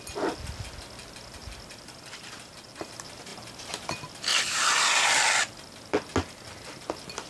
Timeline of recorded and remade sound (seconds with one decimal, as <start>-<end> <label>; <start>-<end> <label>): 0.0-1.4 recorded; 1.4-2.3 remade; 2.3-4.3 recorded; 4.3-4.9 remade; 4.9-7.3 recorded

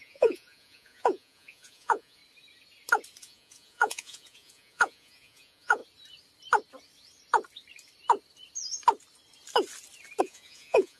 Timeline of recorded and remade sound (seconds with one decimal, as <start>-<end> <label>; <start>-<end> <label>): 0.0-2.2 remade; 2.2-3.2 recorded; 3.2-5.8 remade; 5.8-10.2 recorded; 10.2-11.0 remade

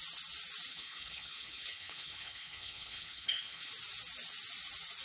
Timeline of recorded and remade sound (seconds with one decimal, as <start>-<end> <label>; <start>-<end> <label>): 0.0-0.7 recorded; 0.7-3.7 remade; 3.7-5.0 recorded